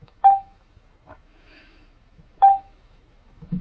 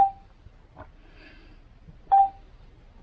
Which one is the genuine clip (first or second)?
second